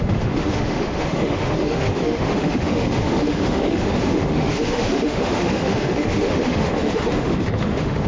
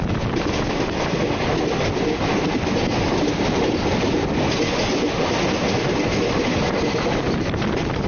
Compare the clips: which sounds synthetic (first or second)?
first